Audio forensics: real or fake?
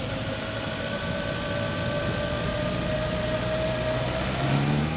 real